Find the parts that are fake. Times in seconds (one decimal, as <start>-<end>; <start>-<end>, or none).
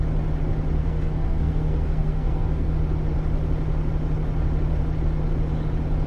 0.8-2.7